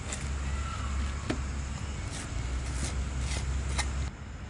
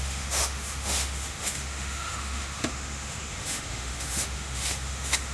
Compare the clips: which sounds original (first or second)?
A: first